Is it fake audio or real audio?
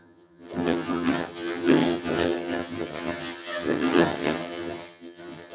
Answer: fake